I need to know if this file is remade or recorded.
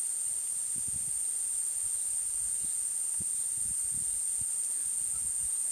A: recorded